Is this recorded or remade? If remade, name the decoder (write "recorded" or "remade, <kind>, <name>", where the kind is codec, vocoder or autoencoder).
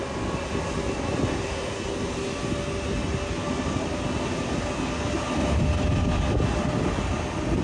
recorded